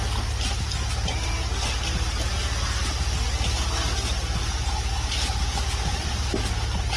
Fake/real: real